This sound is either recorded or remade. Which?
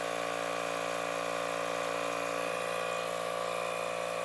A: recorded